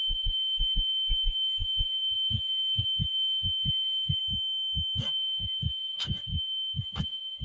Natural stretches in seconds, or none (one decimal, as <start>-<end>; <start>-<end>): 4.2-5.0